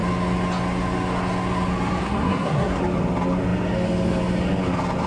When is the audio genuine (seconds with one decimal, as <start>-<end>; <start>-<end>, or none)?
0.0-2.0; 2.8-5.1